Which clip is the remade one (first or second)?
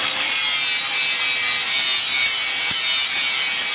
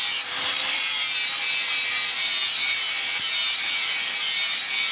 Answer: second